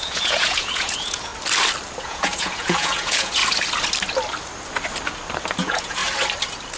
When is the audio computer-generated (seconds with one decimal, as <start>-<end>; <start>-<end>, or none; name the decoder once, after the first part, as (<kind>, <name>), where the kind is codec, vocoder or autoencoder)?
0.0-1.3 (vocoder, Vocos); 2.0-3.4; 5.6-6.0